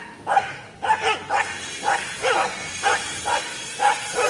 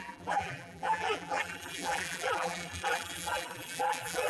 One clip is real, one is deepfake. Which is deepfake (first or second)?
second